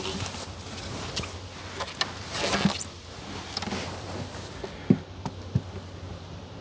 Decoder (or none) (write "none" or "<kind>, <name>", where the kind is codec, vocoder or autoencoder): none